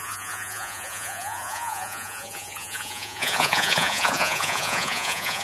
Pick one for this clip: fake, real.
fake